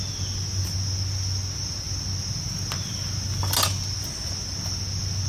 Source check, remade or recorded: recorded